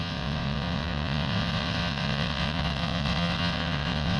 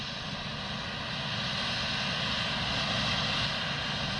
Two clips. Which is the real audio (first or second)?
second